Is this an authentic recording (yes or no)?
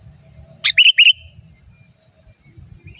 yes